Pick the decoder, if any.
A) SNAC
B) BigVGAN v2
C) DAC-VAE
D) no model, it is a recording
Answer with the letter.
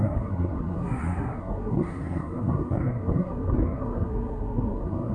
A